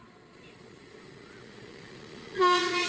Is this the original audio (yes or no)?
no